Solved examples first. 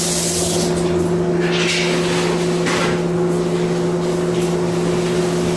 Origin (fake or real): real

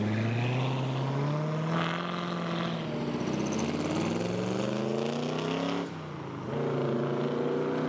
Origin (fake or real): real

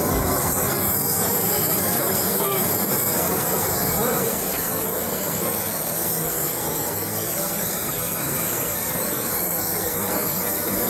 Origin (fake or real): fake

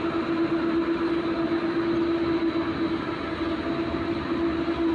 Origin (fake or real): real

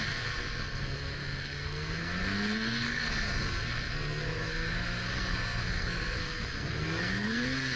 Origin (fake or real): fake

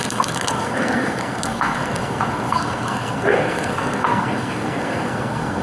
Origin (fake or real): fake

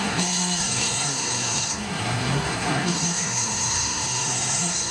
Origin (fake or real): fake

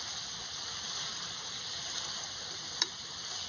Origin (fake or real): real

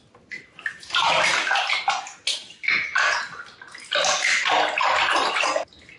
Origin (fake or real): real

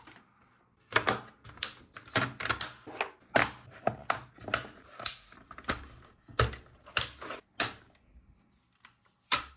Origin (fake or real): real